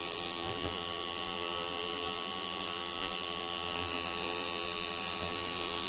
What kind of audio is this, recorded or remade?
remade